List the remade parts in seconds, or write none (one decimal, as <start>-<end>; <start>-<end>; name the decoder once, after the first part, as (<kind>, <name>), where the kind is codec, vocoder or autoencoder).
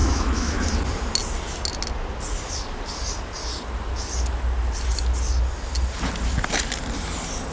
0.0-0.6 (autoencoder, DAC-VAE)